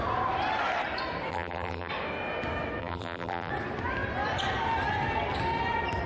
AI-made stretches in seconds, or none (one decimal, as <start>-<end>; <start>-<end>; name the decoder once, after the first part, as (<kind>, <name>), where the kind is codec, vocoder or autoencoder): 1.3-1.9 (vocoder, BigVGAN v2); 2.8-3.5

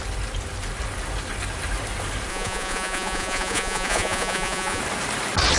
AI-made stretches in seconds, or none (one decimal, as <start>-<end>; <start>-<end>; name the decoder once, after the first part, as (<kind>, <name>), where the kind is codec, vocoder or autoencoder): 2.3-4.8 (vocoder, Vocos)

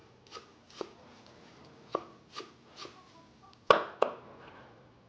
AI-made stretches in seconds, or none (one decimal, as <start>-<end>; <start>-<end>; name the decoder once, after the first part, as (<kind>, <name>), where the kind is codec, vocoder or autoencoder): none